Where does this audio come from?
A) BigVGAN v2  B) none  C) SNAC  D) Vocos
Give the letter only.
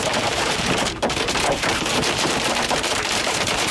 A